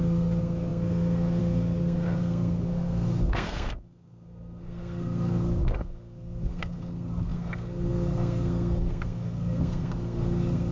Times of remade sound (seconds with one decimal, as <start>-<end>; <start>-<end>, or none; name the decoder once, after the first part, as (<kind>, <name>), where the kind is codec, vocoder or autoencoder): 0.0-10.7 (codec, SNAC)